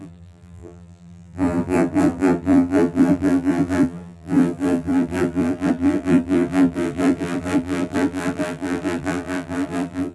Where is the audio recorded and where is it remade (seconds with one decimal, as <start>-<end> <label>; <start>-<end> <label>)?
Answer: 0.0-10.1 remade